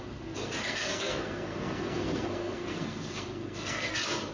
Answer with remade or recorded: remade